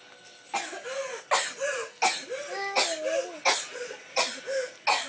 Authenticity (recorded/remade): recorded